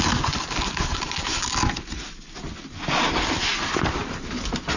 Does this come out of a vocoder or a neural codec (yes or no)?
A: no